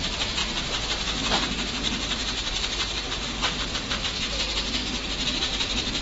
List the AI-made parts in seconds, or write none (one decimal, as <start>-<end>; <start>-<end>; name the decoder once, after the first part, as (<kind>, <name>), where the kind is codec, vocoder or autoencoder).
0.0-0.4 (vocoder, BigVGAN v2); 4.0-4.8; 5.3-6.0